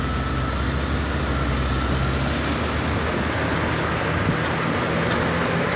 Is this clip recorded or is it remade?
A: recorded